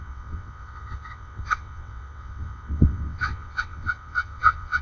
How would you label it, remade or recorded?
remade